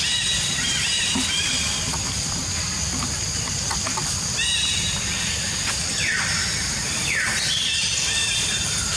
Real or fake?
fake